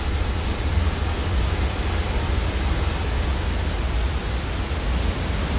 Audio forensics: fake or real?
real